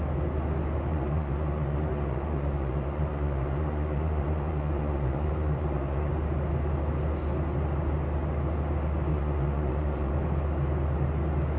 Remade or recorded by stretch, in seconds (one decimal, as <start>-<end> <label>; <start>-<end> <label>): 0.0-0.9 recorded; 0.9-6.1 remade; 6.1-9.1 recorded; 9.1-10.1 remade; 10.1-11.6 recorded